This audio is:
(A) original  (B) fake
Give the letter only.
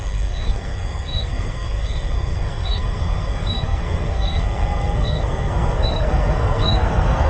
B